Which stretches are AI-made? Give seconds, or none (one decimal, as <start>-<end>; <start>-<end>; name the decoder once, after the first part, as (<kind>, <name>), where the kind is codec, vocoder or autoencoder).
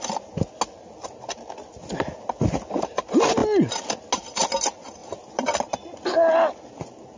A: none